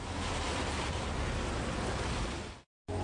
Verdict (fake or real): real